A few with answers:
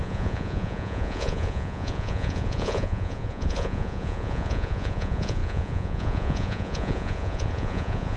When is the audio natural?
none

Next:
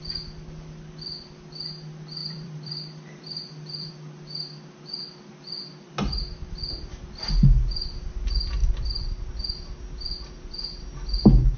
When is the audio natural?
0.0-2.2; 3.9-8.6; 9.3-11.6

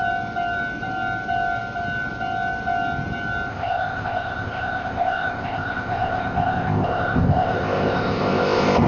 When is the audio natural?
0.0-3.5

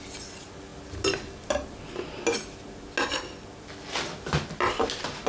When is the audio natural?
0.0-5.3

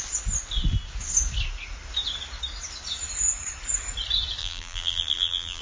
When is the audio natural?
0.0-4.4

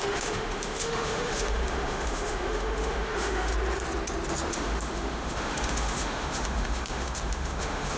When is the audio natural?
3.5-4.5